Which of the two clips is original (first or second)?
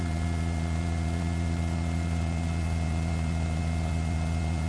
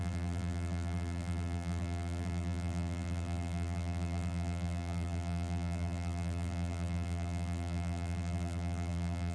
first